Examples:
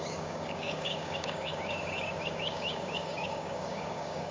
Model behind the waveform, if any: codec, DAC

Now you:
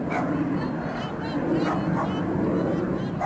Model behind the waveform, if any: none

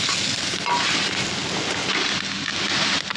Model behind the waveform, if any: none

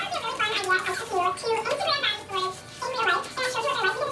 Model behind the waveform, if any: none